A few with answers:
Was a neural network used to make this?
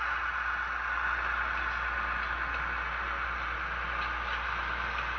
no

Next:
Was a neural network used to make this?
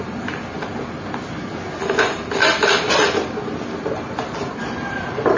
no